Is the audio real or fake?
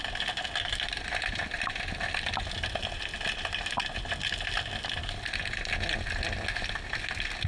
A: real